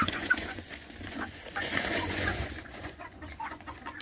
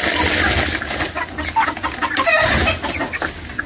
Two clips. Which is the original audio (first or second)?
second